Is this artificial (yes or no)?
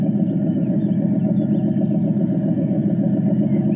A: no